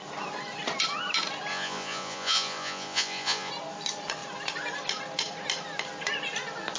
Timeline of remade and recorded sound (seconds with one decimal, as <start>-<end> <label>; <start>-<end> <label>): 0.0-1.5 recorded; 1.5-3.5 remade; 3.5-6.8 recorded